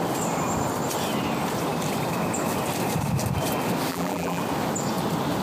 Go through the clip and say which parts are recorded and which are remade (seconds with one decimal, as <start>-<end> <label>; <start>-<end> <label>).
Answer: 0.0-3.9 recorded; 3.9-4.4 remade; 4.4-5.4 recorded